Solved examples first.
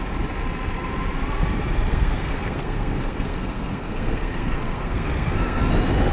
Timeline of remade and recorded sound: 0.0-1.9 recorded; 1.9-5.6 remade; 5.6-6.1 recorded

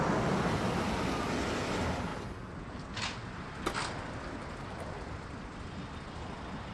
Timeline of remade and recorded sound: 0.0-6.7 recorded